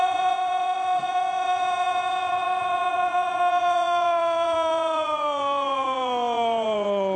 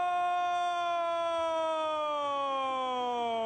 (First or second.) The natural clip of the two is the second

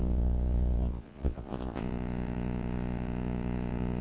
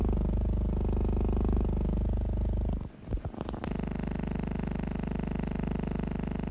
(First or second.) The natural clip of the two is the second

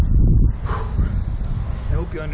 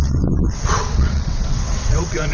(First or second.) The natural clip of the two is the first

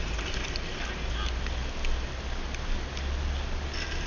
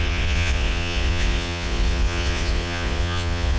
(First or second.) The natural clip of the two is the first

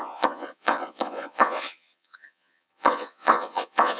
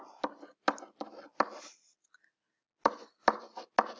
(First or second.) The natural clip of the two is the second